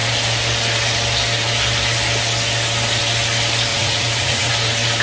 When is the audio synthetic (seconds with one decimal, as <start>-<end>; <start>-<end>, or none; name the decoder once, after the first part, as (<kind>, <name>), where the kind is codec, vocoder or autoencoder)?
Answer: 3.7-4.5 (vocoder, Vocos)